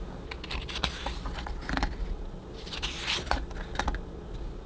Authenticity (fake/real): real